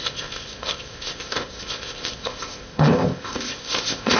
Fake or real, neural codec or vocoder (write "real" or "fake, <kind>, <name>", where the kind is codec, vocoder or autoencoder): fake, codec, ZipCodec